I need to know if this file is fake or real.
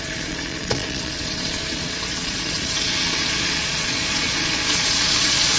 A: fake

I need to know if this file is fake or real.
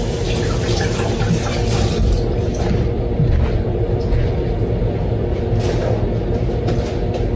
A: real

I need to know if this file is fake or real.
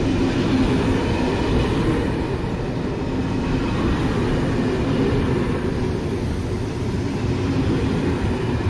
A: real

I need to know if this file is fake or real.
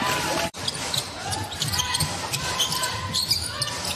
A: fake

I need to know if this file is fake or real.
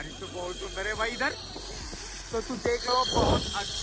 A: real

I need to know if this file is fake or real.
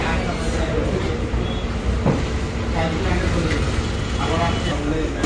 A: real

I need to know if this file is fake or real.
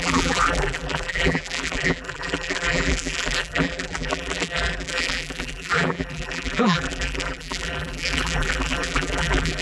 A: fake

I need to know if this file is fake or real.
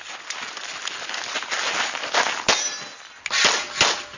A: real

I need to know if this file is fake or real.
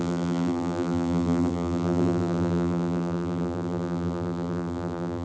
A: fake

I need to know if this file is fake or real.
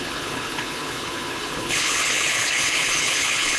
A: fake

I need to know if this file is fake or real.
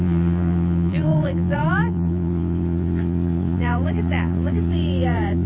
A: fake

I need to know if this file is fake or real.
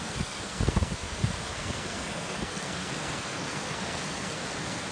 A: fake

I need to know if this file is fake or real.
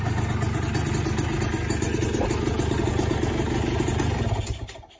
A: real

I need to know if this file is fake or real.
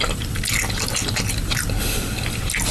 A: real